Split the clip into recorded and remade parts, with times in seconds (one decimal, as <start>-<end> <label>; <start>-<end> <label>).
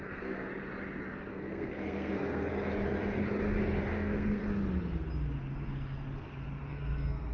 0.0-0.5 remade; 0.5-1.3 recorded; 1.3-2.5 remade; 2.5-3.9 recorded; 3.9-4.4 remade; 4.4-6.7 recorded; 6.7-7.3 remade